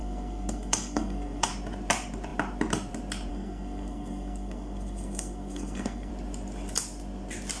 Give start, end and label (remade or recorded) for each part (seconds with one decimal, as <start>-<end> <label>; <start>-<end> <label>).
0.0-1.5 remade; 1.5-3.3 recorded; 3.3-6.1 remade; 6.1-7.6 recorded

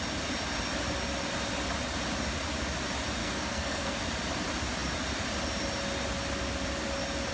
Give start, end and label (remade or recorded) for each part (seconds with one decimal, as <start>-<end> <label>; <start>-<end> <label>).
0.0-3.2 recorded; 3.2-4.0 remade; 4.0-7.3 recorded

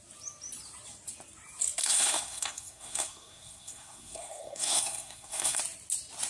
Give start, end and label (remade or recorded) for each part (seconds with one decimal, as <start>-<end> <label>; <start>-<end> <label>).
0.0-1.8 recorded; 1.8-5.6 remade; 5.6-6.3 recorded

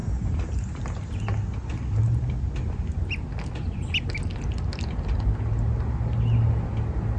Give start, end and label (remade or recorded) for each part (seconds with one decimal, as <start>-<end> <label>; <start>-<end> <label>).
0.0-7.2 recorded

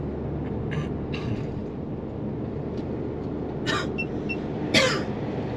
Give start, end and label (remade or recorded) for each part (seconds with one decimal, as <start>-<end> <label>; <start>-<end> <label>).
0.0-5.6 recorded

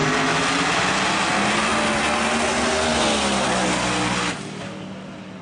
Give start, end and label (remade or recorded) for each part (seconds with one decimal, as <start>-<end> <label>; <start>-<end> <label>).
0.0-5.4 recorded